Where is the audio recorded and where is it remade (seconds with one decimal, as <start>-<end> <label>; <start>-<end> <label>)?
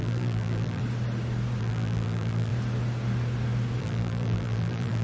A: 0.0-0.8 remade; 0.8-1.6 recorded; 1.6-2.5 remade; 2.5-3.8 recorded; 3.8-5.0 remade